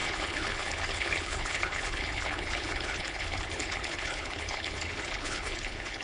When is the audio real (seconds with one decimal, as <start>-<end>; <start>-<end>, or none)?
none